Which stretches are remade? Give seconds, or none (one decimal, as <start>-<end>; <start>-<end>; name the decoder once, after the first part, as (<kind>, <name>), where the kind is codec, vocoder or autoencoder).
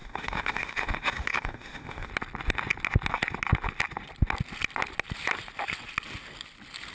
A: 0.0-2.1 (autoencoder, DAC-VAE)